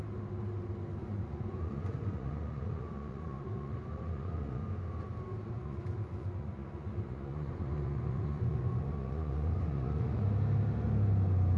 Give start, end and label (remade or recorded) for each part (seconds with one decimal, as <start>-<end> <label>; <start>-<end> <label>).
0.0-1.0 recorded; 1.0-4.6 remade; 4.6-5.4 recorded; 5.4-10.2 remade; 10.2-11.6 recorded